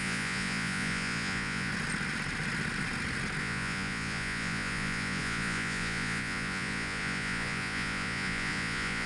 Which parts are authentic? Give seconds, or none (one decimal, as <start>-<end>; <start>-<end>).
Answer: 1.7-3.4